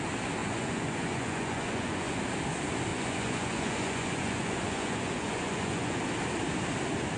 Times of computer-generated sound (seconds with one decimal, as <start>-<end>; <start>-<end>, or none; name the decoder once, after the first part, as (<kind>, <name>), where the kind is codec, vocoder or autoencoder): 0.4-2.2 (vocoder, Vocos); 2.9-6.0